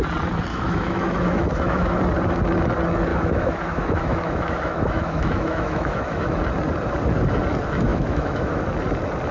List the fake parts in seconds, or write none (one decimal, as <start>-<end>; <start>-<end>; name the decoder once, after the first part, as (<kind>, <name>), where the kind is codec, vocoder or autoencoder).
0.5-2.0 (autoencoder, DAC-VAE); 3.1-6.4; 7.9-8.6